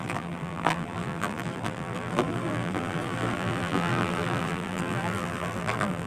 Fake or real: fake